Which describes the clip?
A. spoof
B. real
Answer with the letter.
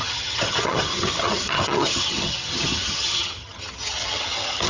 A